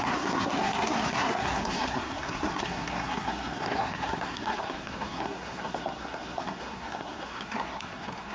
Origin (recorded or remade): remade